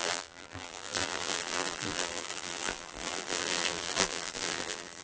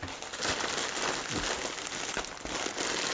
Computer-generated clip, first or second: first